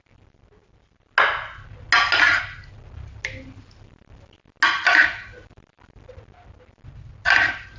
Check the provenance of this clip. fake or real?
real